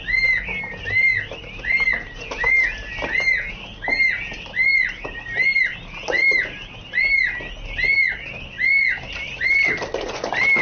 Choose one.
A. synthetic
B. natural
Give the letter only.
B